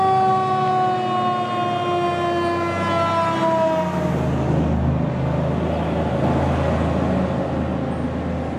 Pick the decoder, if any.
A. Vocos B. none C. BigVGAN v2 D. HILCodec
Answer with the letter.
B